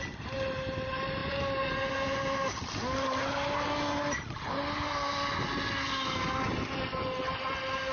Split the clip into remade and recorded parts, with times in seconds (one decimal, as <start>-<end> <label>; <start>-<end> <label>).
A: 0.0-7.9 recorded